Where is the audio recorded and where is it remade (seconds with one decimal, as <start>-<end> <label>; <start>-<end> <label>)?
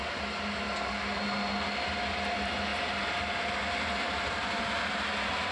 0.0-5.5 recorded